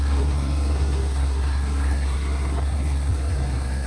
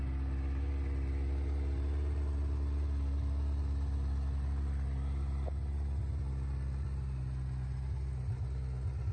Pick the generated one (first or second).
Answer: first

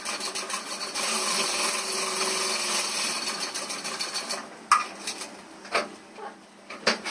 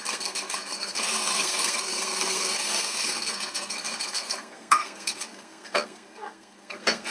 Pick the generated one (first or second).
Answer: second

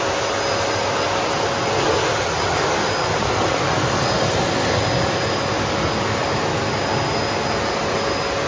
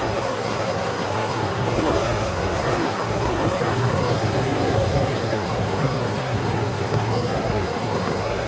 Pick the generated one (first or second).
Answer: second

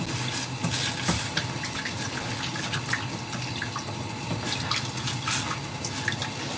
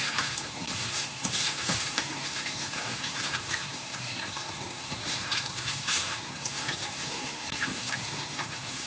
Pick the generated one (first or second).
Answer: second